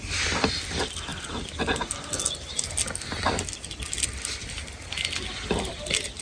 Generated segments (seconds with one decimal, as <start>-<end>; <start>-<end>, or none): none